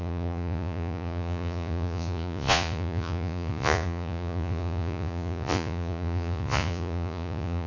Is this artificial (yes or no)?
yes